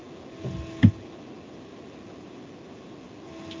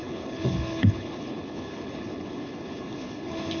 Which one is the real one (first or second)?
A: first